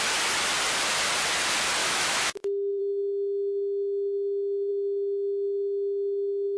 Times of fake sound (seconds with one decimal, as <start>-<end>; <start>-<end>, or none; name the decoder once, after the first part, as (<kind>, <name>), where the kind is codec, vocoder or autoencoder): 1.8-2.8 (autoencoder, DAC-VAE)